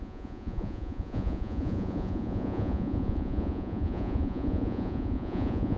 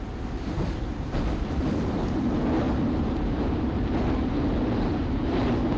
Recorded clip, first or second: second